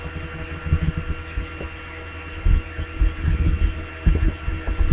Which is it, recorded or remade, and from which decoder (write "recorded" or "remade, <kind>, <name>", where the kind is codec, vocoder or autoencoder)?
recorded